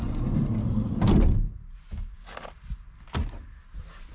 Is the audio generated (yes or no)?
no